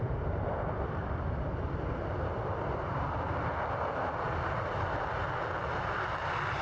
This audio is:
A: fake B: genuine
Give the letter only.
B